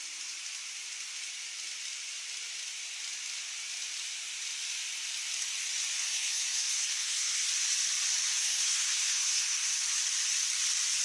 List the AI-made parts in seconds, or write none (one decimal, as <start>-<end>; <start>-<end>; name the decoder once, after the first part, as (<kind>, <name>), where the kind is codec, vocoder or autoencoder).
6.0-7.5 (codec, SNAC); 8.4-9.7